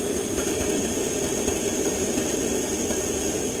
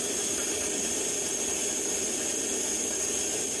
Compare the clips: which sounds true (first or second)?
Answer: second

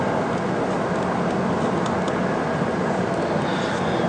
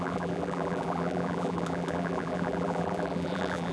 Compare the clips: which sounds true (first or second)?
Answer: first